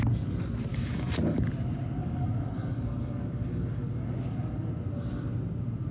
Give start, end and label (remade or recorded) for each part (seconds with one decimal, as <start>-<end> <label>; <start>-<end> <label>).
0.0-0.7 recorded; 0.7-1.4 remade; 1.4-2.0 recorded; 2.0-4.7 remade; 4.7-5.9 recorded